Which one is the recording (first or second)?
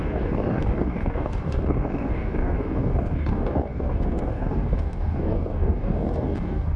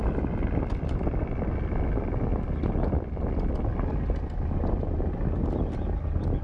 second